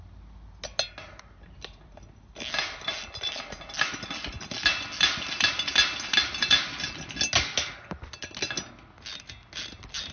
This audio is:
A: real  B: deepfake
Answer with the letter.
A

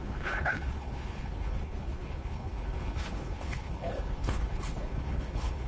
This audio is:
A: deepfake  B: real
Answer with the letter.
A